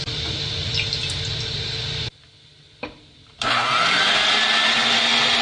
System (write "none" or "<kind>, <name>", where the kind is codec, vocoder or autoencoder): none